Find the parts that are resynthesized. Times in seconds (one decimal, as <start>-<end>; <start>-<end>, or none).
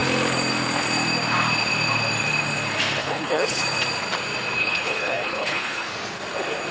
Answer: 3.0-3.6; 4.6-5.9